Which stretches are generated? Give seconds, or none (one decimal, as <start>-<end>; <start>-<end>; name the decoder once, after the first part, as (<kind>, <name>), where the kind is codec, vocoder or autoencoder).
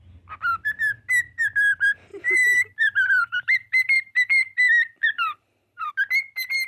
2.1-5.9 (vocoder, BigVGAN v2)